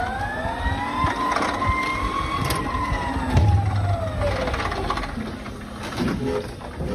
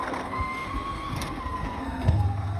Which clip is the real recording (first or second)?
first